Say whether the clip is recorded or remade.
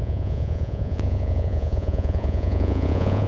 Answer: remade